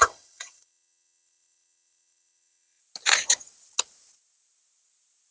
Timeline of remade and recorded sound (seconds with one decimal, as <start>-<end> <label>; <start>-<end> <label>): 0.0-2.8 remade; 2.8-5.3 recorded